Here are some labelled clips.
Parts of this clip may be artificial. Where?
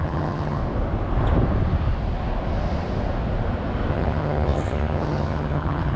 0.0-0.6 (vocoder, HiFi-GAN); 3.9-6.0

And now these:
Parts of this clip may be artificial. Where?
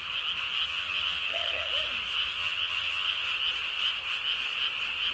0.7-1.7 (vocoder, HiFi-GAN); 2.4-3.3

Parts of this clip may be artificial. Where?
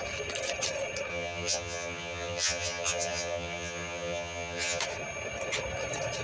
1.1-4.8 (vocoder, HiFi-GAN)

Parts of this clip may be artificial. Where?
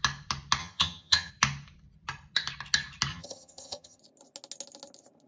0.6-1.3 (vocoder, HiFi-GAN); 3.1-4.0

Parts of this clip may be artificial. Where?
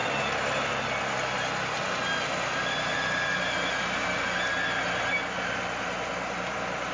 none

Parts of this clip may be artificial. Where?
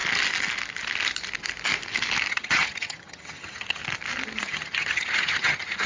2.3-3.8 (vocoder, HiFi-GAN); 4.4-5.9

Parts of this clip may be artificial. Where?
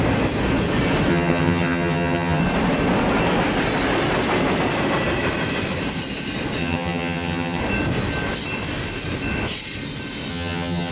1.1-2.4 (vocoder, HiFi-GAN); 6.6-7.6; 10.3-10.9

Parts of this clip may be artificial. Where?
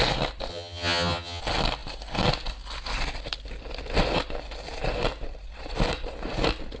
0.5-1.4 (vocoder, HiFi-GAN)